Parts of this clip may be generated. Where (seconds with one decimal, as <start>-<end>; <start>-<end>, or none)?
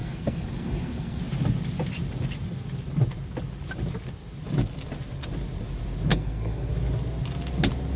0.0-1.2; 6.1-6.7